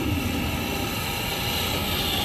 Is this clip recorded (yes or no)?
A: yes